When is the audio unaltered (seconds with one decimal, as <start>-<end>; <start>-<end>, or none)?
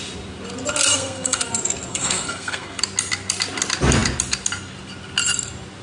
0.0-0.9; 1.4-1.9; 2.8-5.8